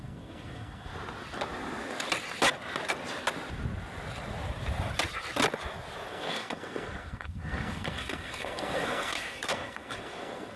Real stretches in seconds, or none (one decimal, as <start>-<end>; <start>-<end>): 0.9-6.1

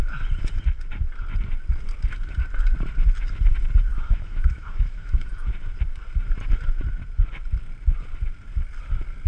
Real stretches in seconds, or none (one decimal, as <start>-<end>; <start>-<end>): 0.0-3.9; 5.5-9.3

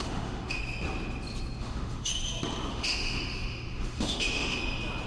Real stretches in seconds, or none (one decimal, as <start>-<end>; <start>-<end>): 0.6-1.6; 2.1-2.7; 4.6-5.1

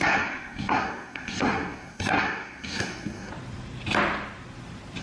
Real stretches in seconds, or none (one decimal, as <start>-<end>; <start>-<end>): 3.3-5.0

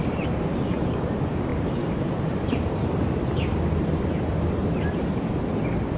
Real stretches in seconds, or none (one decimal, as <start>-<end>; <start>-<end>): 0.0-1.5; 2.9-6.0

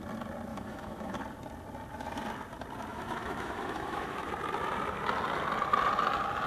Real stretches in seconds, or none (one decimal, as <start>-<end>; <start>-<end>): 0.0-0.5; 1.2-2.9; 4.3-6.5